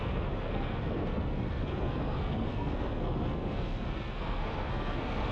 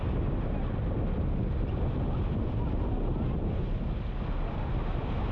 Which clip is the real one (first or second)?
second